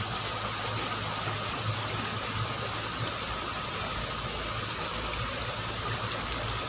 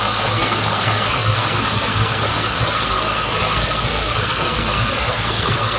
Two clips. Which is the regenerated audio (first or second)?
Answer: second